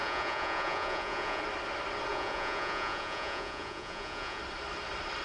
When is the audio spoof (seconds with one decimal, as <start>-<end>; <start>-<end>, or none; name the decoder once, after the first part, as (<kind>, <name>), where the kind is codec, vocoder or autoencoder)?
0.0-1.4 (vocoder, Vocos); 2.1-4.4